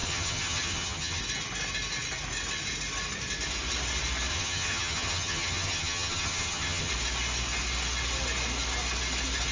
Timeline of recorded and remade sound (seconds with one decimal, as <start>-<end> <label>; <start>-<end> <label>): 0.0-1.2 remade; 1.2-4.3 recorded; 4.3-6.9 remade; 6.9-9.5 recorded